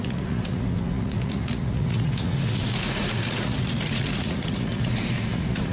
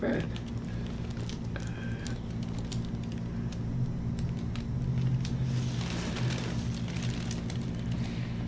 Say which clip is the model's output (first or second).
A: first